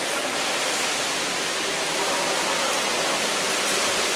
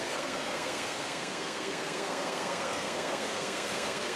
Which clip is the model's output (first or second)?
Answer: second